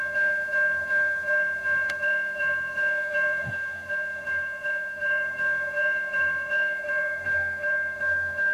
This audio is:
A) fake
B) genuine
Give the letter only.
A